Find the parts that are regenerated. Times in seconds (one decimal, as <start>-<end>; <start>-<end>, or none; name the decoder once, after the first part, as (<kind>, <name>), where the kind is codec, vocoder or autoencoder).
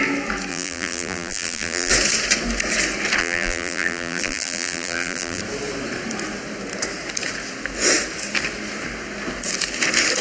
0.5-1.9 (vocoder, BigVGAN v2); 3.2-5.4